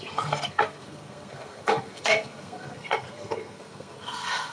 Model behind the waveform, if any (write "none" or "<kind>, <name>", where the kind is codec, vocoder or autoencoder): codec, SNAC